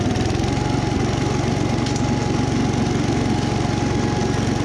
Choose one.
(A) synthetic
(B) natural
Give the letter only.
B